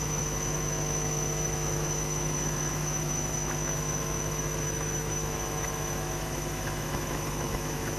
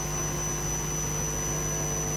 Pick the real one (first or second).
second